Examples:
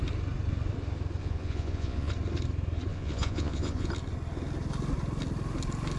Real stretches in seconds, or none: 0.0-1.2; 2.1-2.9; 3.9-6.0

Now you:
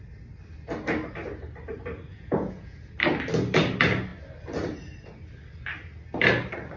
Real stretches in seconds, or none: 0.0-2.1; 2.8-6.8

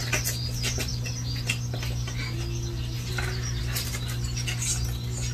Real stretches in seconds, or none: 0.0-5.3

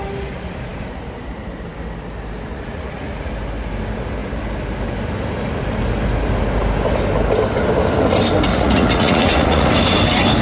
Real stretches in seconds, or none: 0.0-2.5; 3.3-8.5; 9.7-10.4

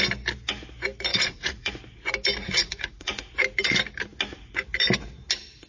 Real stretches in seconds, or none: 0.0-1.1; 1.7-2.4; 3.3-5.7

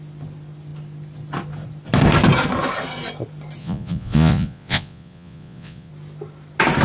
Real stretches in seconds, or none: 0.0-3.6; 5.9-6.8

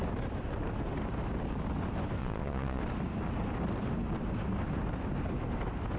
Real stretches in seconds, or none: 0.0-2.2; 2.8-6.0